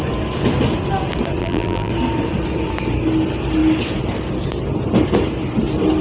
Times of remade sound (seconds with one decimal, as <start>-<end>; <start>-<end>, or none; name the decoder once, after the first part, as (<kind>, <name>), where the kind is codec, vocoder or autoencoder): 1.4-1.9 (vocoder, BigVGAN v2)